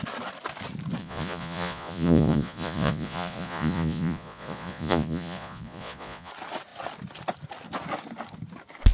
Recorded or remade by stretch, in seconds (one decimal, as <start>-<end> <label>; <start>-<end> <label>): 0.0-1.0 recorded; 1.0-6.3 remade; 6.3-8.9 recorded